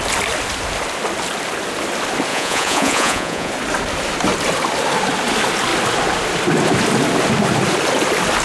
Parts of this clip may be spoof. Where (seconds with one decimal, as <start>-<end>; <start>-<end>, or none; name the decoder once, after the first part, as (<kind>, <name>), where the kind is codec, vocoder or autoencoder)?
2.3-3.5 (vocoder, Vocos)

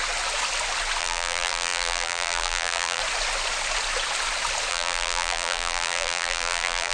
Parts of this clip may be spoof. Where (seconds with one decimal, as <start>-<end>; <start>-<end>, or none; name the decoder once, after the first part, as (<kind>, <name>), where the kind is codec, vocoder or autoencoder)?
1.0-3.0 (vocoder, BigVGAN v2); 4.7-6.9

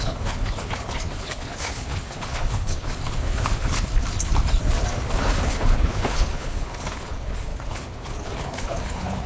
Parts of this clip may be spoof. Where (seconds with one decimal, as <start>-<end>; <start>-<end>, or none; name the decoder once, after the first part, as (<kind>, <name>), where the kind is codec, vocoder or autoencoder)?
0.0-3.9 (codec, HILCodec); 5.2-9.3

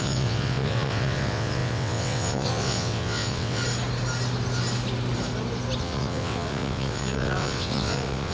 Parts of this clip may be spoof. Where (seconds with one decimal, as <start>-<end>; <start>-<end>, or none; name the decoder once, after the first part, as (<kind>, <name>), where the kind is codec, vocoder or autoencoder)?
0.0-3.6 (vocoder, WaveNeXt); 5.8-8.3

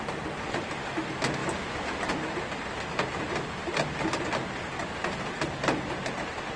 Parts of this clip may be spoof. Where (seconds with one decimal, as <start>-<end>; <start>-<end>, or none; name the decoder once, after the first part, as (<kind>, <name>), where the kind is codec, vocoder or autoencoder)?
none